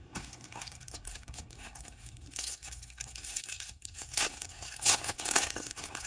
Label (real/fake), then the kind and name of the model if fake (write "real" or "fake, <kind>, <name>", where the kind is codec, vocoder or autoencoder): fake, codec, SNAC